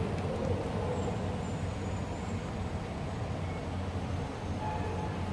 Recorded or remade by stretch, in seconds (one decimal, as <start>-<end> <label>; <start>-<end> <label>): 0.0-5.3 recorded